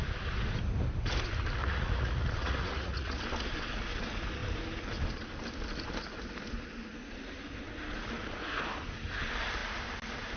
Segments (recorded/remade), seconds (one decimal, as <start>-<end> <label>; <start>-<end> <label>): 0.0-1.6 recorded; 1.6-3.2 remade; 3.2-10.4 recorded